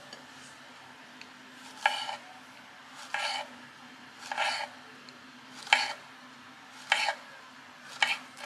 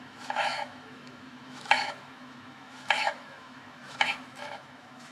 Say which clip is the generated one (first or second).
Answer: second